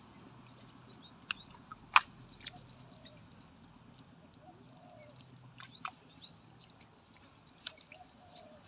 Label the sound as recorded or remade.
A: recorded